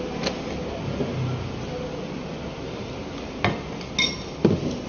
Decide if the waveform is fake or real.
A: real